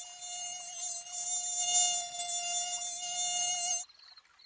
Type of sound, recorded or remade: recorded